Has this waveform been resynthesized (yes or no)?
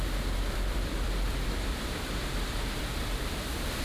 yes